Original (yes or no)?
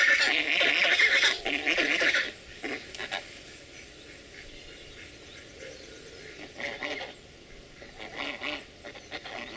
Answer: yes